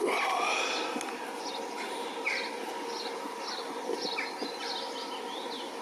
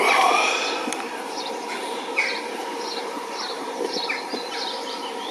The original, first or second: first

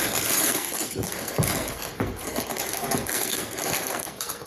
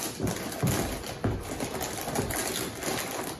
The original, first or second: second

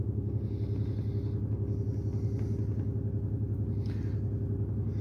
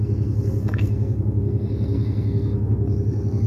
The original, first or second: first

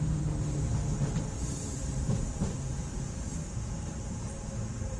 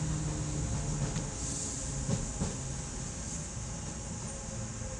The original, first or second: second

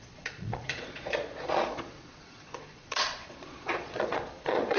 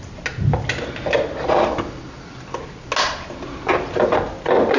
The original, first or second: second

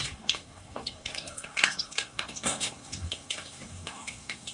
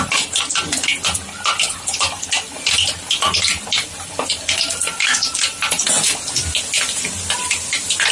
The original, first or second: second